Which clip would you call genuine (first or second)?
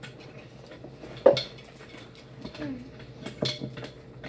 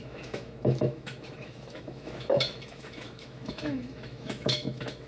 first